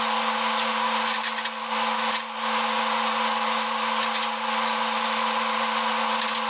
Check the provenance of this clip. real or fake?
real